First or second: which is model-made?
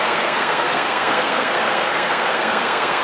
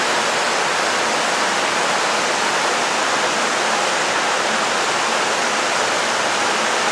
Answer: first